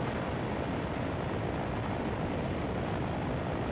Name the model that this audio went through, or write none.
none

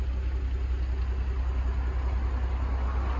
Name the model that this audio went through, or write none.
none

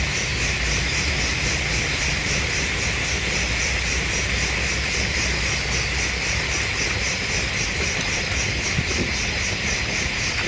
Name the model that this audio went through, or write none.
none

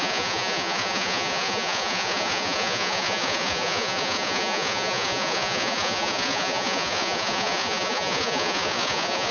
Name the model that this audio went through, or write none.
vocoder, Vocos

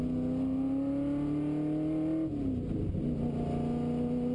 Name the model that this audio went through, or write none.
none